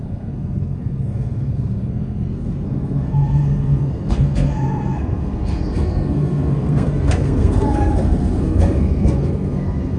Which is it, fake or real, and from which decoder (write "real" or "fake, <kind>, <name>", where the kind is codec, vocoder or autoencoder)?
fake, codec, SNAC